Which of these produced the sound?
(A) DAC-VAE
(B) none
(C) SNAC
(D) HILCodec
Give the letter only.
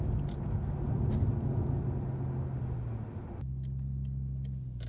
B